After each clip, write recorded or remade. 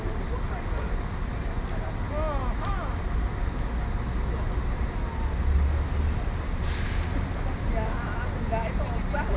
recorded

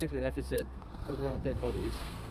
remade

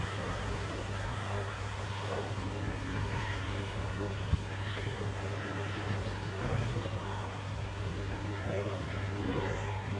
remade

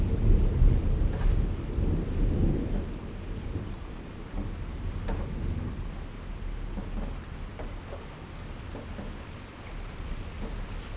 recorded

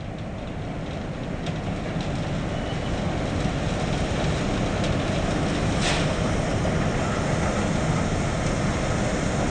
recorded